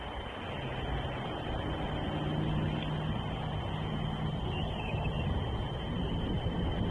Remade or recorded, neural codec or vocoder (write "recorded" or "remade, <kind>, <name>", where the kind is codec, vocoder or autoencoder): recorded